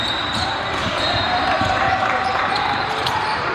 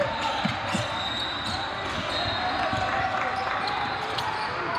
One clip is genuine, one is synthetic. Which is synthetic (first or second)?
first